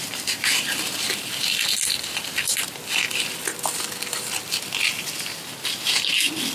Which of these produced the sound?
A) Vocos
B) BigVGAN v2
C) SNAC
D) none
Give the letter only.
D